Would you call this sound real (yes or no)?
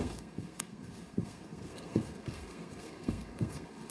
no